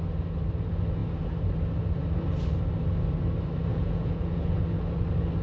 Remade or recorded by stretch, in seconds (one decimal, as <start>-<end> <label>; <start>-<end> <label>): 0.0-3.7 recorded; 3.7-4.6 remade; 4.6-5.4 recorded